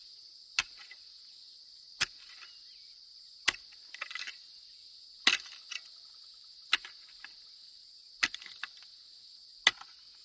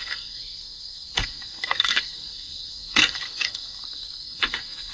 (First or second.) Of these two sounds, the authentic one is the first